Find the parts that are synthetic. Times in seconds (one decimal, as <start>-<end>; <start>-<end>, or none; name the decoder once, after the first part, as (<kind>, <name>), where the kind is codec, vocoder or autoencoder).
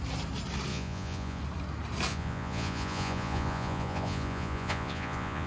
0.7-1.4 (vocoder, Vocos); 2.1-5.5